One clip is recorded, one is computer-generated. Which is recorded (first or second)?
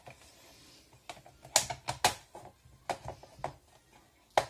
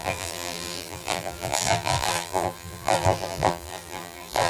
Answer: first